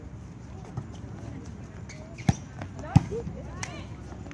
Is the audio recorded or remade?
recorded